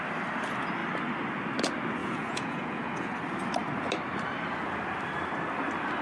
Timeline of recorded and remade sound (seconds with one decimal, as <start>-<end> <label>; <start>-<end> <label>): 0.0-2.0 recorded; 2.0-3.2 remade; 3.2-6.0 recorded